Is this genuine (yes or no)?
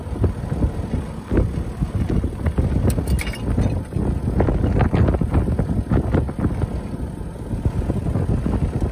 yes